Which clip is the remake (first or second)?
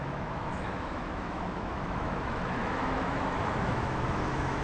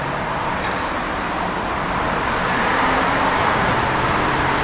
first